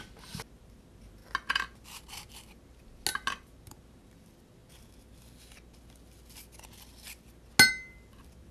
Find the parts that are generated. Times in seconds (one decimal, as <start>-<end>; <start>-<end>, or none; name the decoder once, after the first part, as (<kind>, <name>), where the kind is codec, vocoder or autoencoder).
none

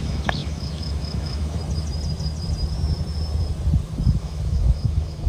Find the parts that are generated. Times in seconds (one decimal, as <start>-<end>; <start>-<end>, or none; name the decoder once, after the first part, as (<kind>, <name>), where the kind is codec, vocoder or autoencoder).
0.0-1.6 (autoencoder, DAC-VAE); 4.2-5.3

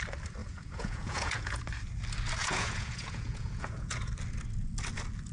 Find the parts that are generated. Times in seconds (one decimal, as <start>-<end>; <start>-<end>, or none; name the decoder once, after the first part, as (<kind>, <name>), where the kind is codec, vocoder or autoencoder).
0.4-1.6 (vocoder, Vocos); 2.4-4.1

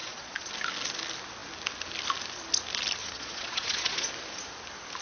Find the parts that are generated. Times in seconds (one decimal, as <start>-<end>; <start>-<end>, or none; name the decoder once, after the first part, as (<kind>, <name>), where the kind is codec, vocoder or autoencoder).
0.0-0.5 (vocoder, Vocos); 3.0-4.1

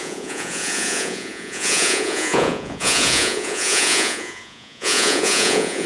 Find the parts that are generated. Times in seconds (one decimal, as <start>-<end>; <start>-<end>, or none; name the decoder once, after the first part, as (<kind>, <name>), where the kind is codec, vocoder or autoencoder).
0.0-5.9 (vocoder, Vocos)

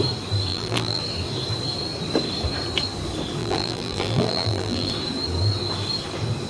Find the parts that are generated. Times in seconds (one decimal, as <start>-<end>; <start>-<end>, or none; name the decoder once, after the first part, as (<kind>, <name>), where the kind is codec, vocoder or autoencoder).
0.5-1.0 (vocoder, BigVGAN v2); 3.4-4.9

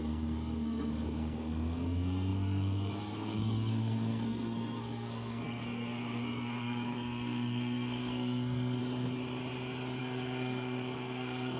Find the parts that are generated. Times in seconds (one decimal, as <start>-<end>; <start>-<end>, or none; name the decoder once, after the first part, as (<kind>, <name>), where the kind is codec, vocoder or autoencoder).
0.0-8.8 (codec, SNAC); 10.0-11.6